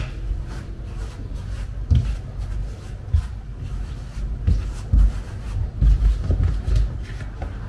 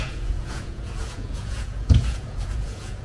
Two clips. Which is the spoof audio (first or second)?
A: second